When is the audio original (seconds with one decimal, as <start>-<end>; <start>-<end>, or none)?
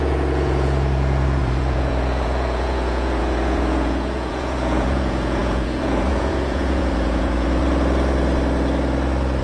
7.6-9.4